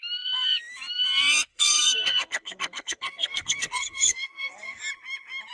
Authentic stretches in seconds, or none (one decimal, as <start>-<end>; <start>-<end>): 0.0-1.5; 4.8-5.5